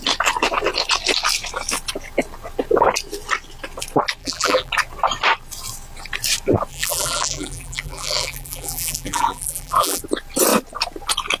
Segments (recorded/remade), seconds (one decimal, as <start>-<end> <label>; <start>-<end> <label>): 0.0-4.2 recorded; 4.2-4.7 remade; 4.7-6.7 recorded; 6.7-10.0 remade; 10.0-11.4 recorded

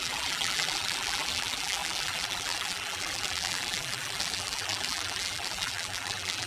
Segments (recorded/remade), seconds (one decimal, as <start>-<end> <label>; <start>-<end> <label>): 0.0-6.5 remade

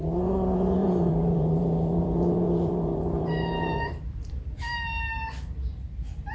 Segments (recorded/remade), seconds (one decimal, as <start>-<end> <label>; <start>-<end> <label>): 0.0-0.8 recorded; 0.8-4.6 remade; 4.6-6.3 recorded

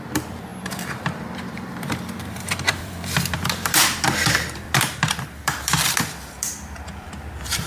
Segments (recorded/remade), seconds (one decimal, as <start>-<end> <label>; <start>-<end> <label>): 0.0-7.7 remade